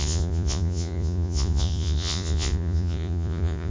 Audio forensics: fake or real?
fake